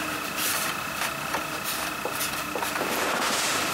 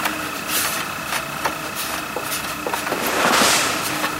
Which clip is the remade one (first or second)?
first